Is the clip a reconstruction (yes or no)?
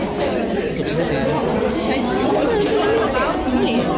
no